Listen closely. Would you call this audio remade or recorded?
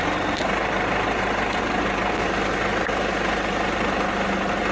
recorded